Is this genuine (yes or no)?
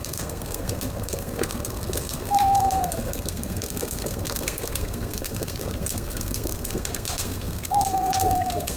no